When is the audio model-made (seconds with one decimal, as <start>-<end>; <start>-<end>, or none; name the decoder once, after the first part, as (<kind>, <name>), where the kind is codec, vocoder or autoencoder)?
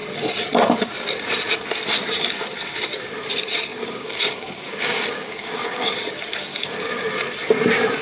3.7-5.9 (codec, DAC); 6.5-7.1